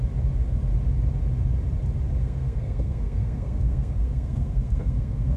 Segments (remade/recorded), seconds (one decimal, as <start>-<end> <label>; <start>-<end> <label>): 0.0-2.2 recorded; 2.2-5.4 remade